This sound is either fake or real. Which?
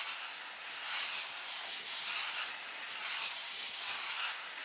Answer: real